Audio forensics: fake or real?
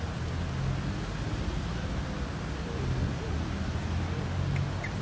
real